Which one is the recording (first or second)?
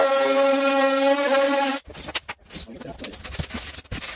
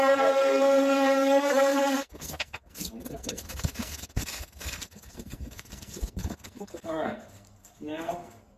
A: first